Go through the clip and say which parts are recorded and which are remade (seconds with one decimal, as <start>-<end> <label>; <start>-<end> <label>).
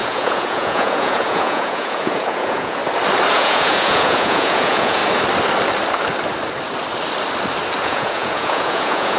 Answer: 0.0-2.8 remade; 2.8-3.3 recorded; 3.3-5.0 remade; 5.0-7.8 recorded; 7.8-9.2 remade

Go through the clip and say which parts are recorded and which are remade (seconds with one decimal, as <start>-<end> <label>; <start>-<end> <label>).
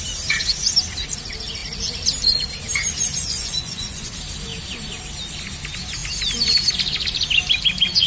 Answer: 0.0-3.2 recorded; 3.2-4.1 remade; 4.1-8.1 recorded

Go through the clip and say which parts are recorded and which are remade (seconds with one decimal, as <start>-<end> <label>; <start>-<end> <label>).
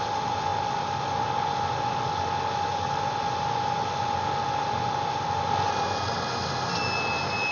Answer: 0.0-7.5 recorded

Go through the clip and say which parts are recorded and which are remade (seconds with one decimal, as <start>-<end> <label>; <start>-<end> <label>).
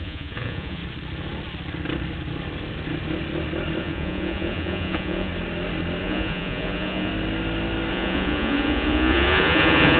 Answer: 0.0-0.8 remade; 0.8-3.8 recorded; 3.8-5.3 remade; 5.3-6.0 recorded; 6.0-7.1 remade; 7.1-7.9 recorded; 7.9-10.0 remade